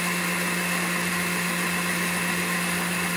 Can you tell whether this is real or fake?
real